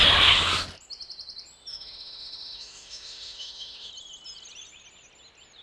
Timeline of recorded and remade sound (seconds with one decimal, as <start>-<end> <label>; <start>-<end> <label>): 0.0-1.7 recorded; 1.7-3.9 remade; 3.9-5.6 recorded